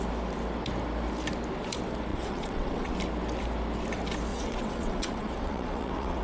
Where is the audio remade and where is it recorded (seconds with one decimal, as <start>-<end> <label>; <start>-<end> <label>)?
0.0-2.1 recorded; 2.1-2.9 remade; 2.9-4.3 recorded; 4.3-6.2 remade